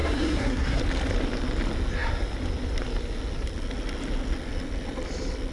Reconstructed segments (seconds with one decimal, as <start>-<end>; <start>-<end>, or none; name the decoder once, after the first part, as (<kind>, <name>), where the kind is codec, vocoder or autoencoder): 0.0-0.8 (codec, SNAC)